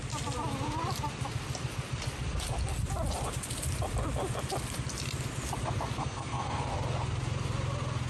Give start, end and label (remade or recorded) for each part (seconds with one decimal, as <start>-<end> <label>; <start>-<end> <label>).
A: 0.0-6.0 recorded; 6.0-6.6 remade; 6.6-8.1 recorded